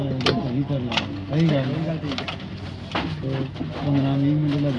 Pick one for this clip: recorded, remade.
recorded